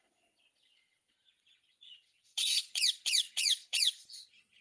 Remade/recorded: remade